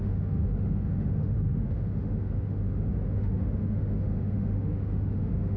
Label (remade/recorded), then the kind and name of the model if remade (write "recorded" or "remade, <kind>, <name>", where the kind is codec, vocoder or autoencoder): remade, autoencoder, DAC-VAE